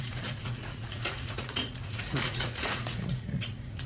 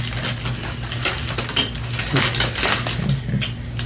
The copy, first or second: first